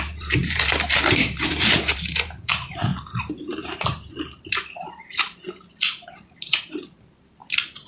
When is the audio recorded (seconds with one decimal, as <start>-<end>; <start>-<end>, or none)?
none